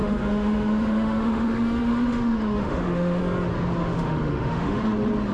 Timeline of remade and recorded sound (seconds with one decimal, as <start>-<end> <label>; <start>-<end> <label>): 0.0-3.2 remade; 3.2-3.8 recorded; 3.8-4.8 remade; 4.8-5.3 recorded